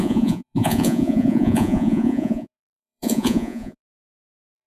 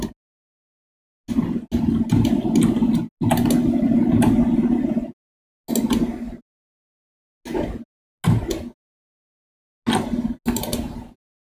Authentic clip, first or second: second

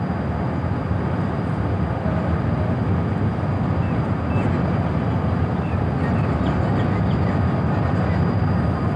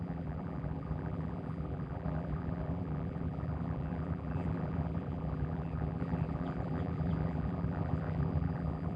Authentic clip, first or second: first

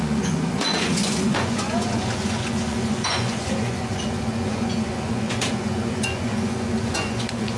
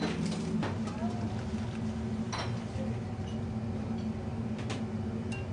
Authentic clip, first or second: second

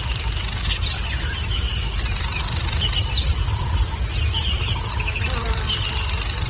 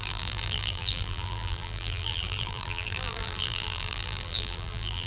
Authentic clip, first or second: first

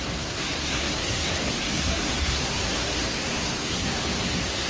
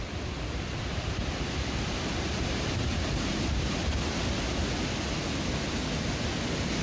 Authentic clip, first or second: second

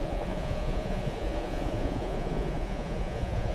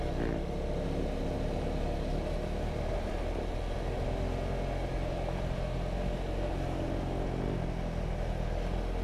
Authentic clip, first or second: second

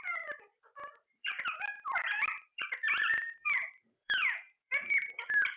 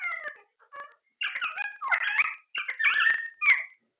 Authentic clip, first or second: second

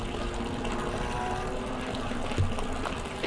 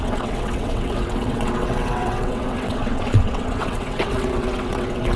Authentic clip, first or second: first